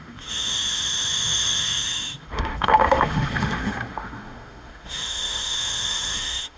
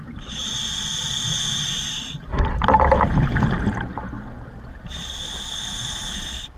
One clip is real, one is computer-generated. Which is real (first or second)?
second